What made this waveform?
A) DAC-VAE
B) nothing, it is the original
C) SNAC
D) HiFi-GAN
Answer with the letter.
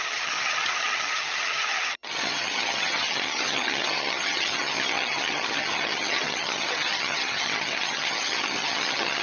D